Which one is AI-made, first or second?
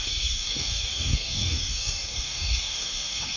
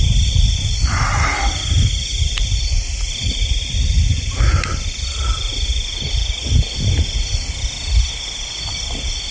first